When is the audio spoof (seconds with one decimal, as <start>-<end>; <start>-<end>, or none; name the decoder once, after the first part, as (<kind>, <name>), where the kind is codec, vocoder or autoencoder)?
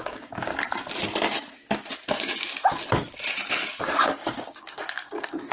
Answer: 0.0-0.5 (codec, DAC); 3.8-5.5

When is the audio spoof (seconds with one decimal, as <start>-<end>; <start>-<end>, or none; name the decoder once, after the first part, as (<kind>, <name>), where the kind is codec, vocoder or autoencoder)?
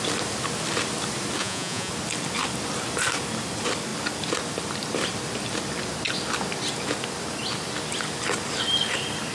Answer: 1.4-1.9 (vocoder, Vocos)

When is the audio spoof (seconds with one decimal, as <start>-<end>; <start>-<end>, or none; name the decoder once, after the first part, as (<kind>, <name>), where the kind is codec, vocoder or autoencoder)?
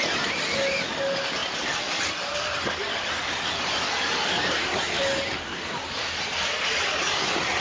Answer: none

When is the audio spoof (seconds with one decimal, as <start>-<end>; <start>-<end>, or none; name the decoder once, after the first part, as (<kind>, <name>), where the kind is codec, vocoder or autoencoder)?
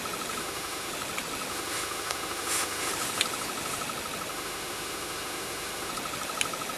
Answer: 0.4-0.9 (autoencoder, DAC-VAE); 1.5-2.9; 4.3-5.9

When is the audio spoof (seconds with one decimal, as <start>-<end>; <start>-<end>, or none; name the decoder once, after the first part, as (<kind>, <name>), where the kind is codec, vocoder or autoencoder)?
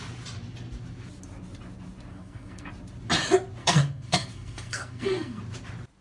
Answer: 2.1-2.7 (codec, SNAC); 3.6-5.4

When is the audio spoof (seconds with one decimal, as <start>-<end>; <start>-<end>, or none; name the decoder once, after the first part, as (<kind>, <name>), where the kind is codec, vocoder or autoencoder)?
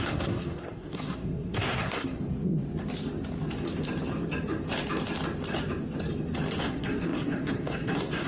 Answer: 0.0-2.2 (codec, SNAC); 6.6-8.3